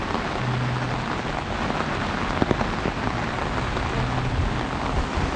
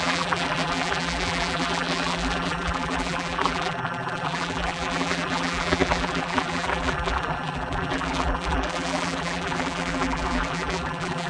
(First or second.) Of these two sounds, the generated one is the second